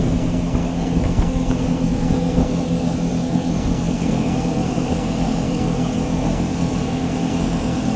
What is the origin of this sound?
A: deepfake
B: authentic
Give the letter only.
A